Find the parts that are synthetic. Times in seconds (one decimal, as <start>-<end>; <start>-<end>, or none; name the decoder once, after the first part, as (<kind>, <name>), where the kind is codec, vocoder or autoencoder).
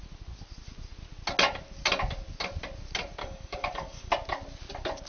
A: 3.2-4.1 (codec, DAC)